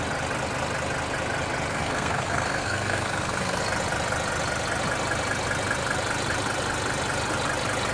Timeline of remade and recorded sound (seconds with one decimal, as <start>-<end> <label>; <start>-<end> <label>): 0.0-1.7 recorded; 1.7-3.6 remade; 3.6-7.9 recorded